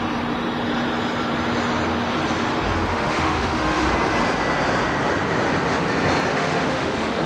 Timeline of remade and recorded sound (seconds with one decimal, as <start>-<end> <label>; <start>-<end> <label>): 0.0-2.9 recorded; 2.9-3.9 remade; 3.9-6.3 recorded; 6.3-7.3 remade